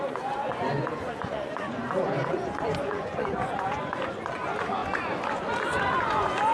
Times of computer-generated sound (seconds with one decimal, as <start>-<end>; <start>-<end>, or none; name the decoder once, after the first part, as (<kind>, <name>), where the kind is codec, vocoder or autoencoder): 0.0-6.5 (vocoder, Vocos)